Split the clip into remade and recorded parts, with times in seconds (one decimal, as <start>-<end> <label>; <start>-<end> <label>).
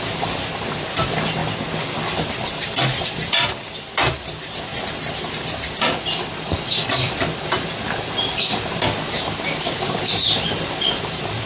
0.0-1.4 remade; 1.4-2.3 recorded; 2.3-4.7 remade; 4.7-9.6 recorded; 9.6-11.5 remade